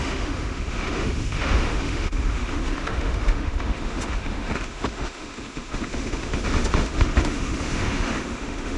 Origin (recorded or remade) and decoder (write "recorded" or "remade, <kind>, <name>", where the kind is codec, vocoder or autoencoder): remade, autoencoder, DAC-VAE